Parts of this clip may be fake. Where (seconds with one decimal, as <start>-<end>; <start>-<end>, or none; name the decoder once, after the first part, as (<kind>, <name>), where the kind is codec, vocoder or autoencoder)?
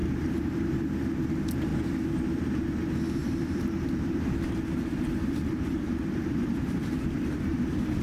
0.0-0.7 (vocoder, BigVGAN v2); 3.2-8.0